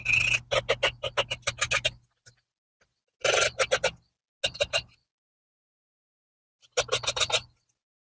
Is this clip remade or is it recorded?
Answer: recorded